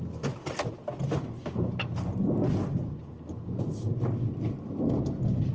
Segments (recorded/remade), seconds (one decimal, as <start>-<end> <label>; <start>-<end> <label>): 0.0-5.5 recorded